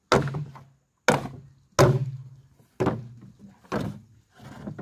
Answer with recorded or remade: recorded